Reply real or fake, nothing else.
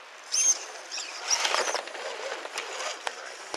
real